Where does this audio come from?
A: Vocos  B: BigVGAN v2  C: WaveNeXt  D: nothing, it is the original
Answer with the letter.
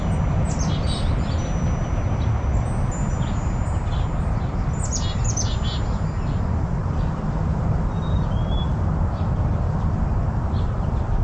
D